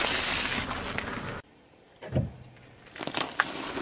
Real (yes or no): yes